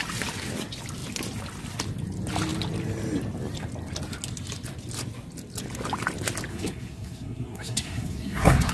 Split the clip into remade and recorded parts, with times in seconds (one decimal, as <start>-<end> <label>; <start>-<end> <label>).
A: 0.0-6.5 recorded; 6.5-8.7 remade